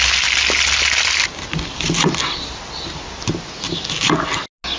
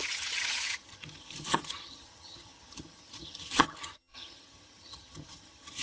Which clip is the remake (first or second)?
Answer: second